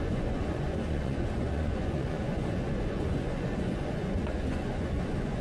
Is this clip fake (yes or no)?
yes